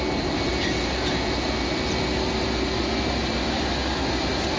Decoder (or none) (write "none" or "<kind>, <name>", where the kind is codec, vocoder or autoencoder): none